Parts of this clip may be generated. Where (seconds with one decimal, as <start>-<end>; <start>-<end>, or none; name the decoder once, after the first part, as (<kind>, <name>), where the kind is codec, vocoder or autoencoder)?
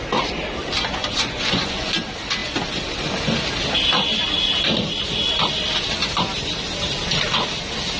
1.0-1.9 (vocoder, Vocos)